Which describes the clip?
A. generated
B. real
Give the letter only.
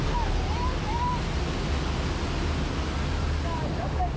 B